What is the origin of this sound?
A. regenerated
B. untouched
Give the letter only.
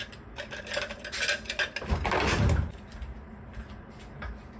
B